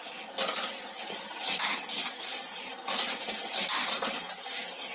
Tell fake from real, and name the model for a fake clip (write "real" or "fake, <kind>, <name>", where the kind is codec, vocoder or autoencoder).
real